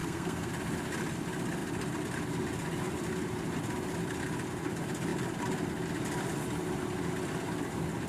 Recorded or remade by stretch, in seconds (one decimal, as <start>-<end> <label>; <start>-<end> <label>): 0.0-0.5 remade; 0.5-8.1 recorded